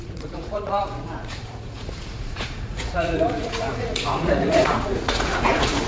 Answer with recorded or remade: remade